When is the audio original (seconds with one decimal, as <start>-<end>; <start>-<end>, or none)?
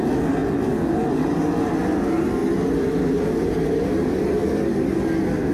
0.0-5.5